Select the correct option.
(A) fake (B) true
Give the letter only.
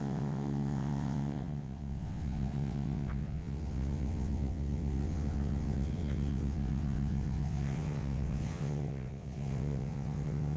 A